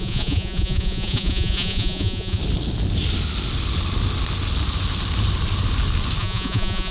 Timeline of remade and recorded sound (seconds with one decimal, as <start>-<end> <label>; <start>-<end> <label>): 0.0-2.4 remade; 2.4-6.2 recorded; 6.2-6.9 remade